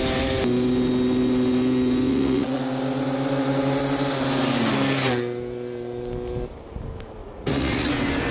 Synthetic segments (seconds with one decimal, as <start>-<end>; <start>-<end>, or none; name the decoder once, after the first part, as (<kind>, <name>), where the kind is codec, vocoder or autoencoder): 2.1-2.6 (vocoder, Vocos); 7.2-7.9